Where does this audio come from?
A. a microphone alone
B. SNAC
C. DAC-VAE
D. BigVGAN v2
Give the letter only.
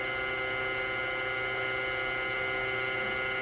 A